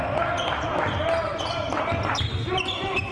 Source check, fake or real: real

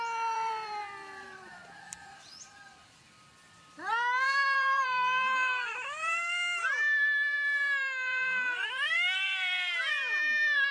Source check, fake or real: fake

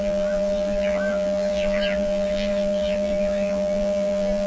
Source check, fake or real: fake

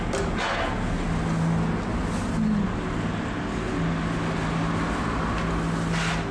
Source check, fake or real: real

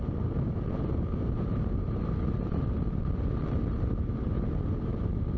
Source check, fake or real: fake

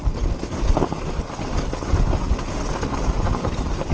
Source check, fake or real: real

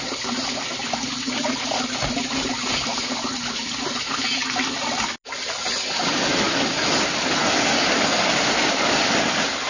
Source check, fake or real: real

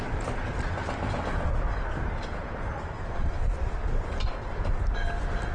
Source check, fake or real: real